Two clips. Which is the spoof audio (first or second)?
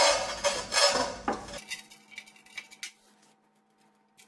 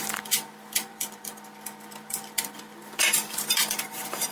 second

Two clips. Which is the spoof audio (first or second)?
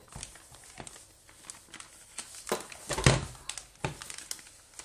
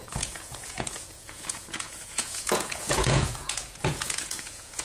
second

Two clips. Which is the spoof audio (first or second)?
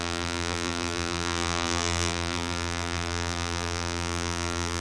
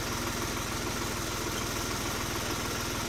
first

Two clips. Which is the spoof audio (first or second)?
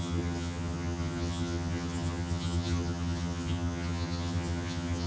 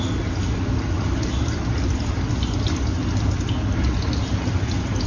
first